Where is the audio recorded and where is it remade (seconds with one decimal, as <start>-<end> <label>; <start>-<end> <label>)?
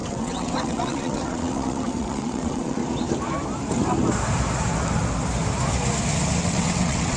0.0-2.8 remade; 2.8-6.4 recorded; 6.4-7.2 remade